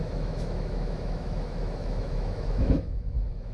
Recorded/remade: remade